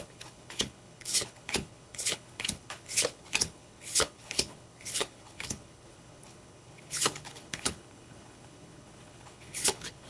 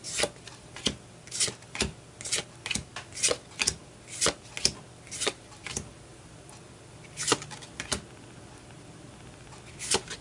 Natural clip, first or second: second